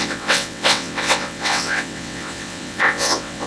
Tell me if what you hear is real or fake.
fake